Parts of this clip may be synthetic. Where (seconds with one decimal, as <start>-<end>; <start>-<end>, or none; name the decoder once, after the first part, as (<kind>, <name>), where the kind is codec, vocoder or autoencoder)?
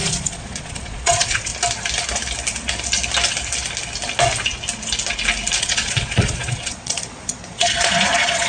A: 0.0-1.5 (vocoder, Vocos); 5.6-8.5